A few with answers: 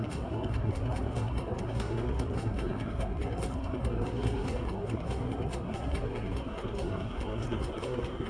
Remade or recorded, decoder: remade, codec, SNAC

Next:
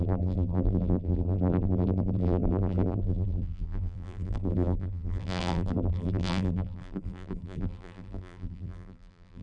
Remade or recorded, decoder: remade, vocoder, BigVGAN v2